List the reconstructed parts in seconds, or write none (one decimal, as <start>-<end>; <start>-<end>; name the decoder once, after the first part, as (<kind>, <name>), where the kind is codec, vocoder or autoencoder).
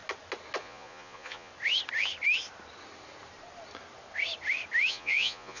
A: 0.6-1.5 (vocoder, Vocos); 4.9-5.6